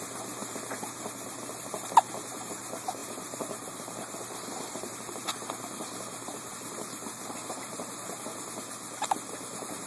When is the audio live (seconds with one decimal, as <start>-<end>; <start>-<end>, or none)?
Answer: 0.0-3.0; 7.9-9.9